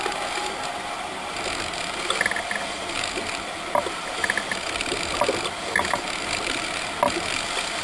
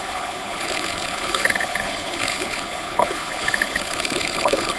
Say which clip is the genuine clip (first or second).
first